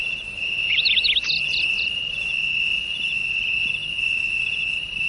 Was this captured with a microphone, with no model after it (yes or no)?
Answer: yes